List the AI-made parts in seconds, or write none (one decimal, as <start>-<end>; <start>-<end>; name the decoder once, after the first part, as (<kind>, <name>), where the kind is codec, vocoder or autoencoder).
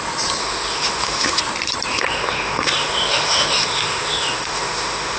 0.4-1.4 (autoencoder, DAC-VAE); 1.9-5.2